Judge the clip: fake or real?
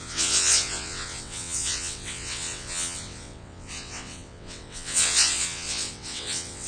fake